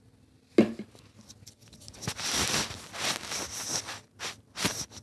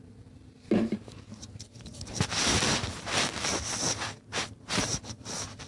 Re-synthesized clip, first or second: second